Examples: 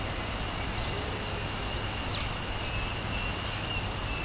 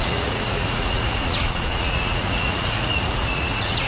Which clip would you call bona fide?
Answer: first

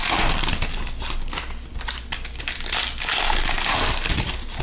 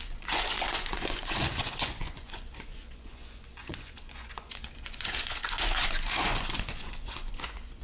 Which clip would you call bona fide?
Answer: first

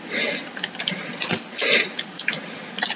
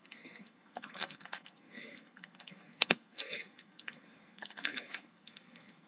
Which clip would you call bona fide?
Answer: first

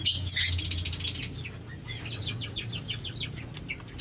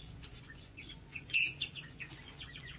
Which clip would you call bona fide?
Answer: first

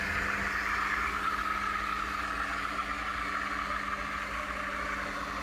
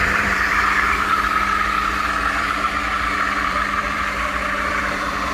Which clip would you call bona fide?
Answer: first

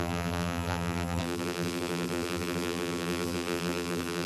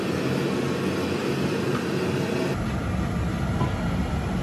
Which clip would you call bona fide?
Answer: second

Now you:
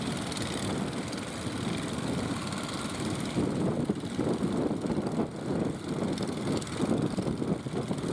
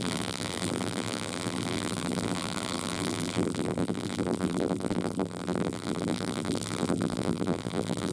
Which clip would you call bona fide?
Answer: first